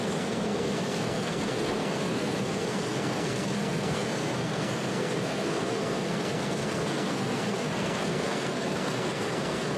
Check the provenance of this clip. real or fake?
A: fake